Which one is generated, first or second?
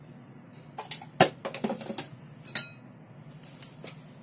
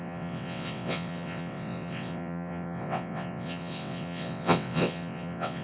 second